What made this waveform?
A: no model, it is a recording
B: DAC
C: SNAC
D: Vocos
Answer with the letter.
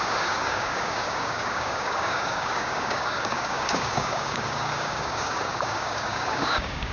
B